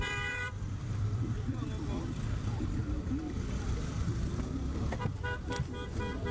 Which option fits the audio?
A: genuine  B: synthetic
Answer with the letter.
B